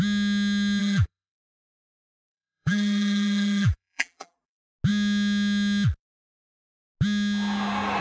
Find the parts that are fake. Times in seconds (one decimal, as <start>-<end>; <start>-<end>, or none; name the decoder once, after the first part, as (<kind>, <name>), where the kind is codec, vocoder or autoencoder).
0.8-4.5 (vocoder, BigVGAN v2)